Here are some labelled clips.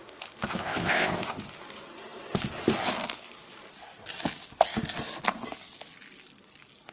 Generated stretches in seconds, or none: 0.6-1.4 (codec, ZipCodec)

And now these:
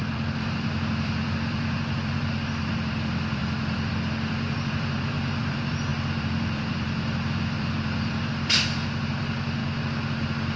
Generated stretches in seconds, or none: 0.0-9.6 (vocoder, BigVGAN v2)